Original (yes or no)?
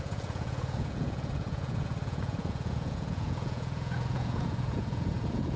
no